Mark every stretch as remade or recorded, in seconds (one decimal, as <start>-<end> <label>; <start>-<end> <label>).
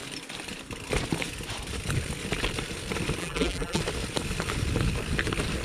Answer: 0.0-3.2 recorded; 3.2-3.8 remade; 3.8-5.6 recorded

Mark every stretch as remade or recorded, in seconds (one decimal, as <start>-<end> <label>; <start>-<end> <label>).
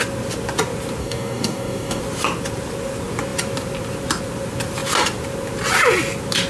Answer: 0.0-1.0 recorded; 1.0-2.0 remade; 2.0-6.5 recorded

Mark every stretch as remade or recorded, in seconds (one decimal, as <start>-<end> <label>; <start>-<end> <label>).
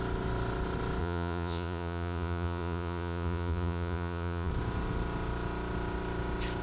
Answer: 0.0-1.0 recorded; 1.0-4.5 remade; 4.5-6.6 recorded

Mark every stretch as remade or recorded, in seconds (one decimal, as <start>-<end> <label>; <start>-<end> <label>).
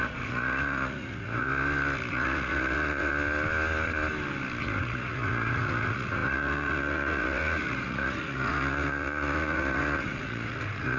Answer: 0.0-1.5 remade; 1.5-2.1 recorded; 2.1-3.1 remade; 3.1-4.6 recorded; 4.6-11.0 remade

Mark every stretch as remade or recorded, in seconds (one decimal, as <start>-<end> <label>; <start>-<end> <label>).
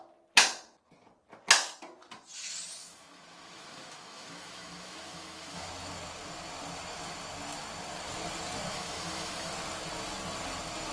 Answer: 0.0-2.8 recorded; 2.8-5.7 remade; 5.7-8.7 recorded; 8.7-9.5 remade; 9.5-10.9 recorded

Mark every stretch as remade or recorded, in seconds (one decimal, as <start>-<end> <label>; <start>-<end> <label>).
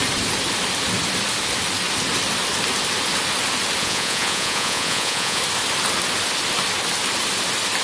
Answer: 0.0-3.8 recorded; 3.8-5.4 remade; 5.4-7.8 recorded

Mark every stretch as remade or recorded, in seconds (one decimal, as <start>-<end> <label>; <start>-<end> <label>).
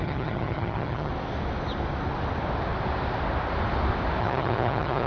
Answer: 0.0-1.1 remade; 1.1-4.2 recorded; 4.2-5.1 remade